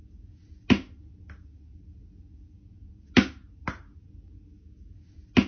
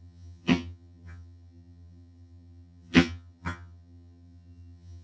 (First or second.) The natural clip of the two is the first